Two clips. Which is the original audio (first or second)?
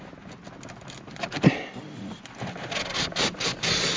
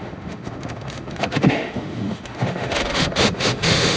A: first